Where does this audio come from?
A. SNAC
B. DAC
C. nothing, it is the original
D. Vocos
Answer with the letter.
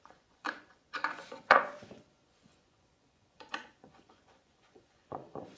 D